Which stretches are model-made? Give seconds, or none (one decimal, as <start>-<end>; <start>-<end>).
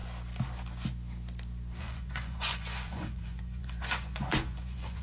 1.8-5.0